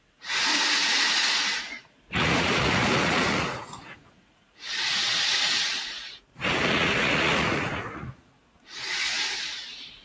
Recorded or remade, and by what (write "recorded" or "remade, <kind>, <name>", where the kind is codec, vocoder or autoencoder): remade, vocoder, Vocos